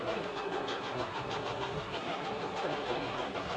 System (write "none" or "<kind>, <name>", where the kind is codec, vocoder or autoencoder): codec, SNAC